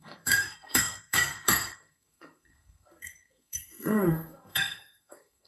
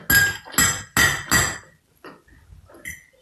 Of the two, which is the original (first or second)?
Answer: second